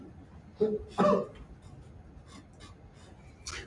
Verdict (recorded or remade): recorded